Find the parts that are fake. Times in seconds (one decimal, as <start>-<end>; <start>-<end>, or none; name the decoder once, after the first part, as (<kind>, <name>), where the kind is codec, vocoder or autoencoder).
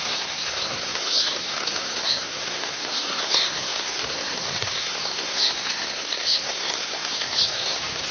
0.0-8.1 (codec, SNAC)